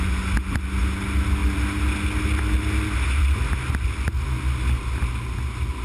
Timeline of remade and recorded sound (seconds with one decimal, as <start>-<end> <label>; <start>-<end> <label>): 0.0-5.8 recorded